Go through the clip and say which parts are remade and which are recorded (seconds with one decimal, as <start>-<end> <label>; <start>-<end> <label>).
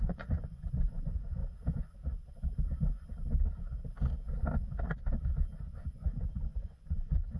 0.0-1.4 remade; 1.4-5.6 recorded; 5.6-7.4 remade